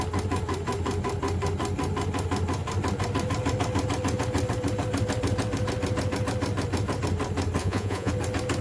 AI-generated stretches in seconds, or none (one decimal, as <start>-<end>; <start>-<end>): 7.6-8.1